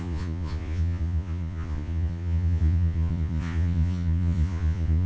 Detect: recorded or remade remade